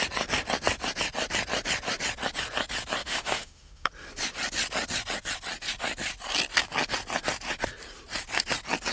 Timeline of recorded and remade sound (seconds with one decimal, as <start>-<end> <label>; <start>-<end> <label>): 0.0-3.0 recorded; 3.0-3.9 remade; 3.9-8.9 recorded